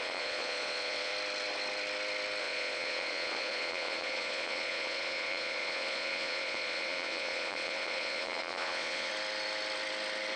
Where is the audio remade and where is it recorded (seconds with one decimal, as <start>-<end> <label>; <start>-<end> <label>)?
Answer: 0.0-1.1 remade; 1.1-2.4 recorded; 2.4-9.1 remade; 9.1-10.4 recorded